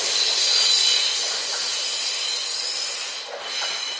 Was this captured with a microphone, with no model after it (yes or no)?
yes